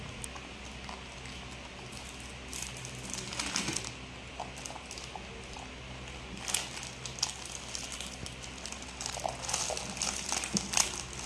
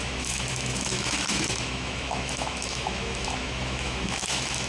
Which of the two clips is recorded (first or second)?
first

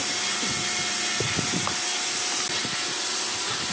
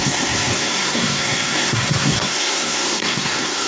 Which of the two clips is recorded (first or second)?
first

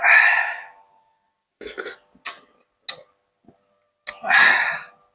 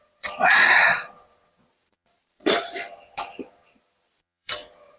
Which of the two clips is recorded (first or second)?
first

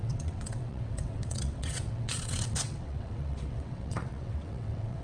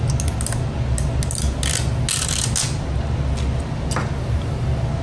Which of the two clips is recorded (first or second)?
second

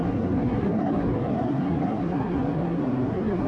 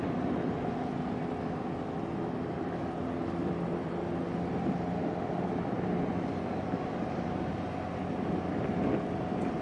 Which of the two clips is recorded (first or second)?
second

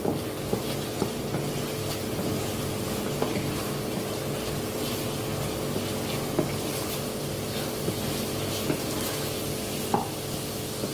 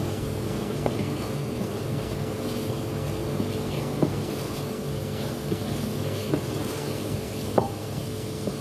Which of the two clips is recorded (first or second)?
first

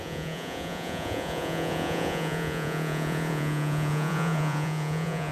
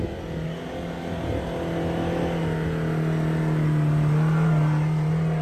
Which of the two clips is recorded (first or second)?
second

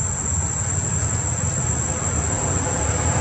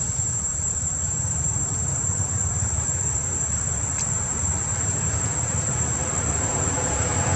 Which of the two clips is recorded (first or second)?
first